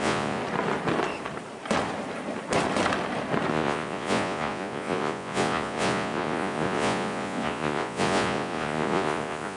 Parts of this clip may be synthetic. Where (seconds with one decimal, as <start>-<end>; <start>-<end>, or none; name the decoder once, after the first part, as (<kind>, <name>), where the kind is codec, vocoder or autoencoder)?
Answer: 0.0-0.4 (vocoder, Vocos); 3.5-9.6